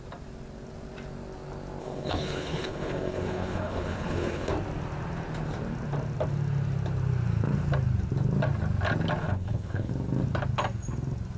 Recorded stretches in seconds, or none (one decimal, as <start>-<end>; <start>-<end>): 0.0-1.8; 4.5-9.2; 9.9-11.4